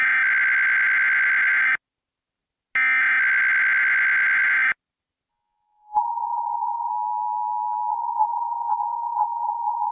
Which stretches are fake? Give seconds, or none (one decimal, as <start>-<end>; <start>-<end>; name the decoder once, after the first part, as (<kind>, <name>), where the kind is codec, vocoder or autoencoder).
5.3-6.9 (vocoder, Vocos); 7.9-9.9